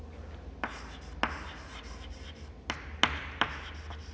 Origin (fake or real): real